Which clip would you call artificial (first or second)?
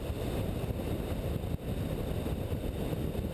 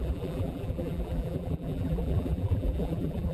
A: second